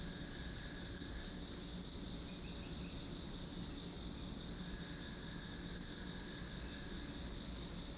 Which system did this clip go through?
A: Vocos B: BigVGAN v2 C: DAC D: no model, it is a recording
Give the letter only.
D